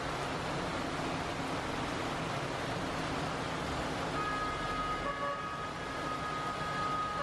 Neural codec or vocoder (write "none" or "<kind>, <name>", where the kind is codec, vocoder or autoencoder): none